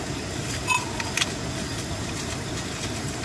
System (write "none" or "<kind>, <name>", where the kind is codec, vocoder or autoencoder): none